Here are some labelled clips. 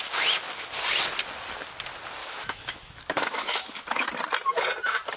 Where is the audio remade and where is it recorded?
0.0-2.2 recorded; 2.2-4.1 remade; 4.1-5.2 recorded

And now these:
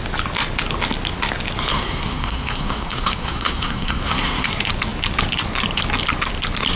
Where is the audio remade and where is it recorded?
0.0-1.7 recorded; 1.7-4.5 remade; 4.5-6.8 recorded

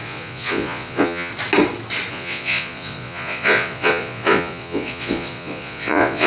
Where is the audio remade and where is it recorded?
0.0-1.3 remade; 1.3-2.1 recorded; 2.1-6.3 remade

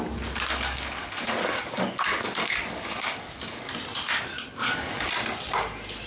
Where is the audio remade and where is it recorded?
0.0-0.5 recorded; 0.5-3.7 remade; 3.7-4.6 recorded; 4.6-5.1 remade; 5.1-6.1 recorded